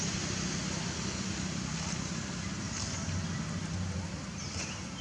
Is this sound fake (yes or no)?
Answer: no